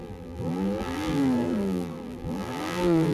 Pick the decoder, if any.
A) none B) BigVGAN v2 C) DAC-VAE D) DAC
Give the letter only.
B